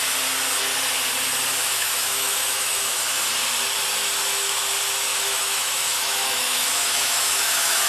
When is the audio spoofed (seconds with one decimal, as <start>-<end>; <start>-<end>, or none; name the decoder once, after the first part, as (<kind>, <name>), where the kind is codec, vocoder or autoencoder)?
1.6-3.0 (autoencoder, DAC-VAE); 5.1-7.9